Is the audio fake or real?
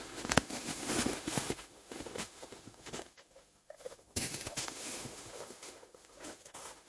fake